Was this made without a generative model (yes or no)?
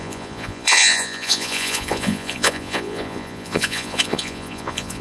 no